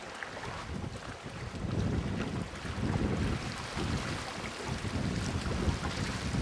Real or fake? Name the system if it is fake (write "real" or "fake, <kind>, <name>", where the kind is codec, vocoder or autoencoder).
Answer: real